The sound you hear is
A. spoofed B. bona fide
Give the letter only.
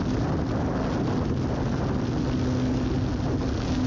B